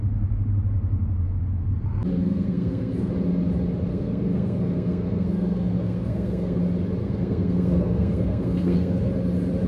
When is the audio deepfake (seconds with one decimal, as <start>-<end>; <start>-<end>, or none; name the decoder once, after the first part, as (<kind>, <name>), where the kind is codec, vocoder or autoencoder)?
2.1-3.1 (codec, SNAC); 3.9-6.6; 7.0-9.1